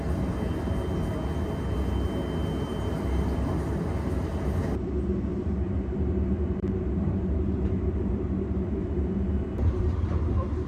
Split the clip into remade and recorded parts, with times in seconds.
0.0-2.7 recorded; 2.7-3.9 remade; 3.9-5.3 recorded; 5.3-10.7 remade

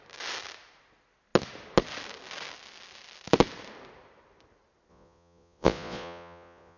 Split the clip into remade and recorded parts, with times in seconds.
0.0-4.9 recorded; 4.9-6.8 remade

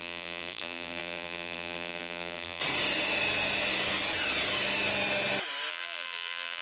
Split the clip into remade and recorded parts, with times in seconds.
0.0-2.6 remade; 2.6-5.7 recorded; 5.7-6.6 remade